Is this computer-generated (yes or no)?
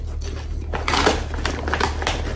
no